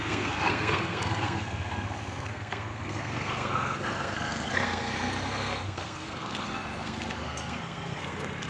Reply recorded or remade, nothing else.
remade